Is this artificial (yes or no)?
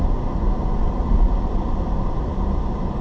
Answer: no